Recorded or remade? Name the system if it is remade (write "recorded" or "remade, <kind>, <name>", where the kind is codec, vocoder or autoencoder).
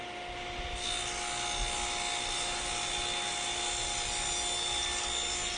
recorded